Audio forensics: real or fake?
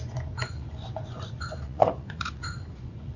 fake